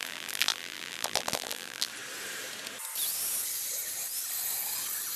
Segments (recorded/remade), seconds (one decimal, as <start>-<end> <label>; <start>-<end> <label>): 0.0-1.9 remade; 1.9-5.2 recorded